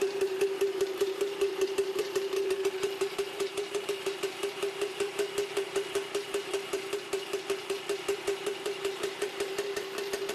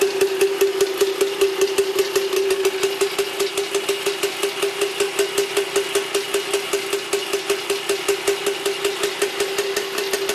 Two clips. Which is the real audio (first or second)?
second